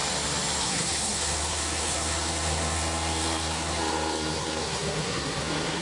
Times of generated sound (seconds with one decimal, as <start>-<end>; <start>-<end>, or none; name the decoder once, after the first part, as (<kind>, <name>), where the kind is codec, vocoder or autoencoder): 0.6-5.8 (codec, SNAC)